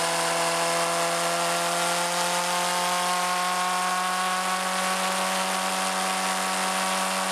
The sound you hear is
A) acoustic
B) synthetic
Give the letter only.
A